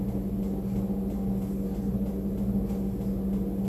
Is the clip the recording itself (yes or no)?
yes